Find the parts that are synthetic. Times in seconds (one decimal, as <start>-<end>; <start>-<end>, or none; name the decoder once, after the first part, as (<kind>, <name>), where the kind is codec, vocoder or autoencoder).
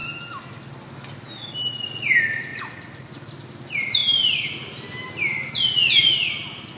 2.5-3.1 (vocoder, Vocos)